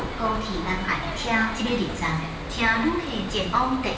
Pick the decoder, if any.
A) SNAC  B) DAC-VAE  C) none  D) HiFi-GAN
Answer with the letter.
C